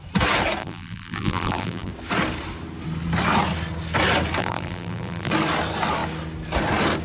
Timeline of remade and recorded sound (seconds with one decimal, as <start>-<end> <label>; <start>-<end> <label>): 0.0-0.6 recorded; 0.6-1.9 remade; 1.9-4.4 recorded; 4.4-5.3 remade; 5.3-7.0 recorded